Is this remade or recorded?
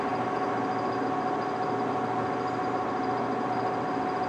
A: recorded